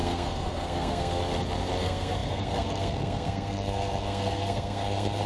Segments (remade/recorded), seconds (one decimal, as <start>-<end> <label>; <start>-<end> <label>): 0.0-1.2 remade; 1.2-1.8 recorded; 1.8-5.3 remade